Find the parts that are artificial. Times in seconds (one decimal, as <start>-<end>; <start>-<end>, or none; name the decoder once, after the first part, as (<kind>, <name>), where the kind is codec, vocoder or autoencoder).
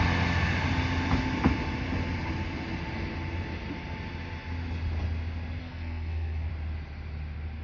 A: 5.6-6.5 (codec, SNAC)